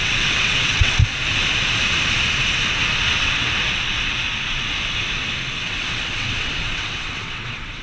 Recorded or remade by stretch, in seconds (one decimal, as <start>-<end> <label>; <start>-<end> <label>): 0.0-1.0 remade; 1.0-5.6 recorded; 5.6-7.8 remade

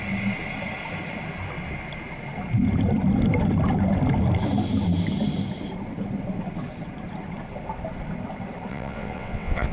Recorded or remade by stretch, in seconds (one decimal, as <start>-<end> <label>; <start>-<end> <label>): 0.0-8.7 recorded; 8.7-9.7 remade

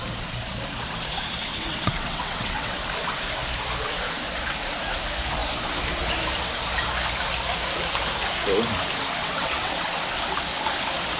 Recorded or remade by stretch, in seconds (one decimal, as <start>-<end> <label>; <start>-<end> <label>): 0.0-1.5 recorded; 1.5-2.8 remade; 2.8-9.2 recorded; 9.2-9.7 remade; 9.7-11.2 recorded

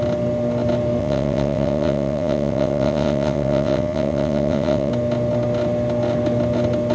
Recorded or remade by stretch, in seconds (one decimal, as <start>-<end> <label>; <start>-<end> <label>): 0.0-1.0 recorded; 1.0-4.9 remade; 4.9-6.9 recorded

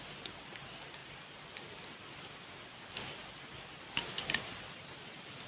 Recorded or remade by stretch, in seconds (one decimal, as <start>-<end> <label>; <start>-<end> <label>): 0.0-5.5 recorded

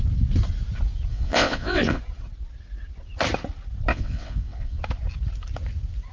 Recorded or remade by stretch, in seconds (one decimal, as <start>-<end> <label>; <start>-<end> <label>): 0.0-1.1 recorded; 1.1-2.0 remade; 2.0-3.9 recorded; 3.9-4.8 remade; 4.8-6.1 recorded

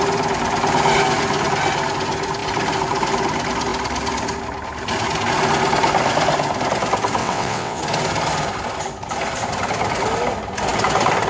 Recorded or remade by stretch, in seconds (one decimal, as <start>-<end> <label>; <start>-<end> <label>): 0.0-7.2 recorded; 7.2-7.8 remade; 7.8-11.3 recorded